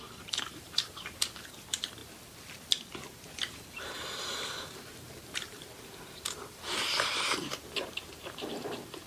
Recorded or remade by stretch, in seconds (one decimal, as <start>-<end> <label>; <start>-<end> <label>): 0.0-2.0 remade; 2.0-3.1 recorded; 3.1-9.1 remade